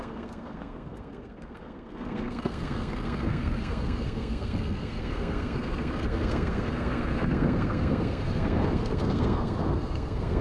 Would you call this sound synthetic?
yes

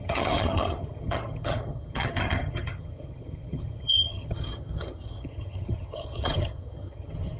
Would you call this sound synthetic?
yes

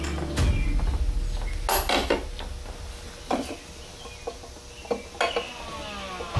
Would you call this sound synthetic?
no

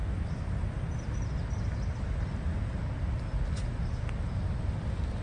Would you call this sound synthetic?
no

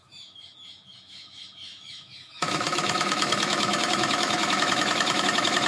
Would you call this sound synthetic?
yes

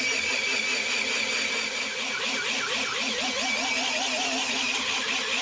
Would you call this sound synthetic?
no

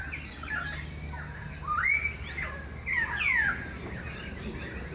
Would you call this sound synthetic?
no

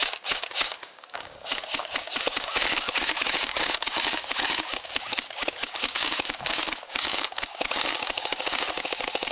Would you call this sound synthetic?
yes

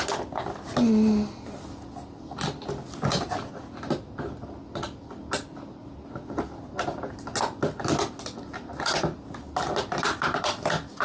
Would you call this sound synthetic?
no